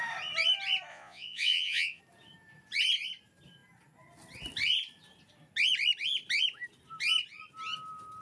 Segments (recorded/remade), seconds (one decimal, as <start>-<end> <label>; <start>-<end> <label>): 0.0-0.9 recorded; 0.9-2.0 remade; 2.0-8.2 recorded